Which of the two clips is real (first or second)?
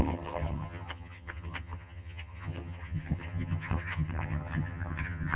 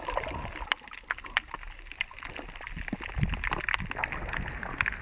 second